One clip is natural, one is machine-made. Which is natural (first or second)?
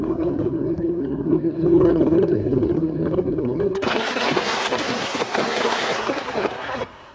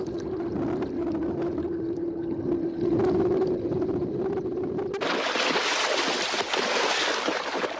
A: second